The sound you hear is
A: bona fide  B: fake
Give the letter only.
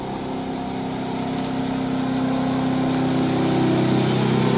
A